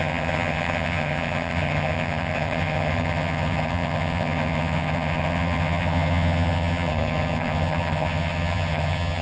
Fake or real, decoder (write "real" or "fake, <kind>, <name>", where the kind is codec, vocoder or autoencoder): fake, vocoder, HiFi-GAN